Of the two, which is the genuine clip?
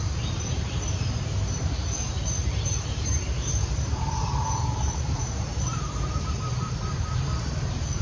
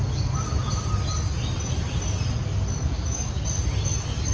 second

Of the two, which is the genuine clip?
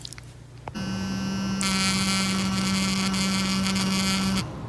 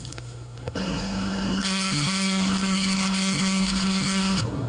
first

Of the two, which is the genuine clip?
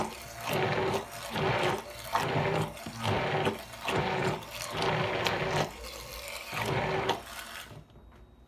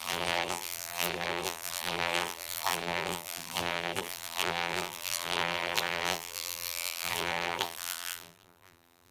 first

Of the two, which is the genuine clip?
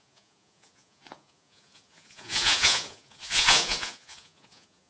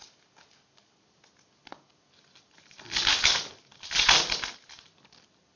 second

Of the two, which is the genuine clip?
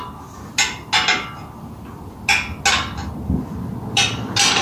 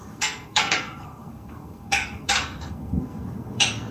first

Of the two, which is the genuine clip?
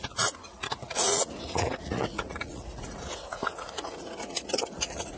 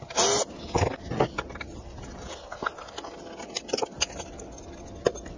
second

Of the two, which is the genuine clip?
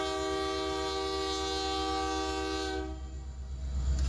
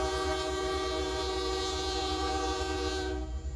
first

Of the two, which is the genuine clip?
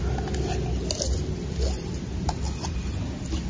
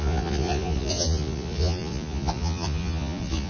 first